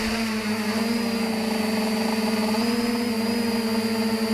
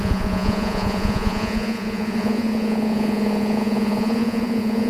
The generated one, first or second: second